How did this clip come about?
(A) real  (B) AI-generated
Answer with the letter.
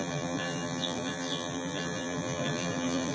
B